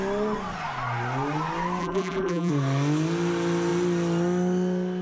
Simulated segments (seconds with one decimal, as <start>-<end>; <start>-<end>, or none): 1.8-2.5